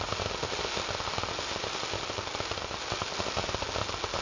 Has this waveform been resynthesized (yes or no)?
no